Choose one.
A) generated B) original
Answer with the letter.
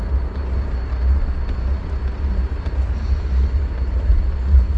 B